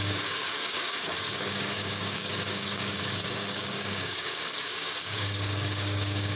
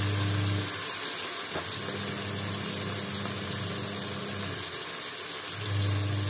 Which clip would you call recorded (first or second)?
second